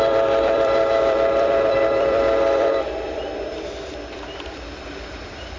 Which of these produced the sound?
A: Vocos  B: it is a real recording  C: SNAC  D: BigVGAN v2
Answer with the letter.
D